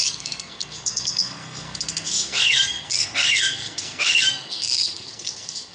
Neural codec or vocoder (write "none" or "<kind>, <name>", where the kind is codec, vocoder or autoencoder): codec, SNAC